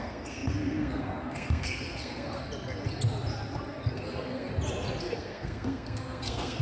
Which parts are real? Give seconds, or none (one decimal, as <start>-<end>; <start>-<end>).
2.4-3.9; 4.5-5.0